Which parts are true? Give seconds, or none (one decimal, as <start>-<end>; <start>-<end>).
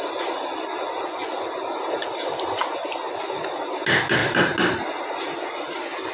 0.0-2.6; 3.2-6.1